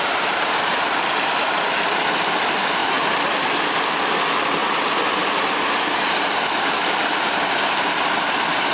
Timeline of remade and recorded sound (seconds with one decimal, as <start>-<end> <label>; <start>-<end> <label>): 0.0-2.8 remade; 2.8-4.0 recorded; 4.0-4.6 remade; 4.6-6.1 recorded; 6.1-8.7 remade